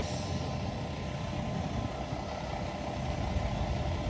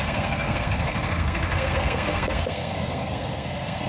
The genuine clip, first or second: first